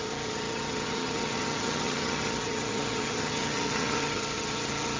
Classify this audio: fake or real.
fake